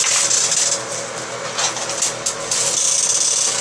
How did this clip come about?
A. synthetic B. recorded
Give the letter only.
B